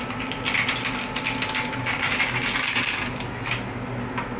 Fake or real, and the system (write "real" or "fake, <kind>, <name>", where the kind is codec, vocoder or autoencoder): real